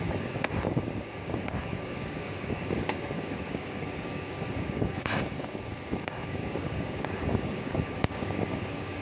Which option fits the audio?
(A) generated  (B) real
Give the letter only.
A